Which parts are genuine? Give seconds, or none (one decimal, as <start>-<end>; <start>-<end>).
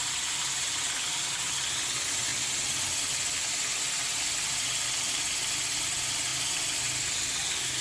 0.0-7.8